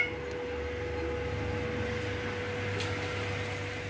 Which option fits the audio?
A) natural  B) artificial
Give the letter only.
A